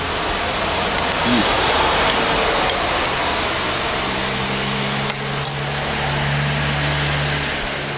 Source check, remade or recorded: recorded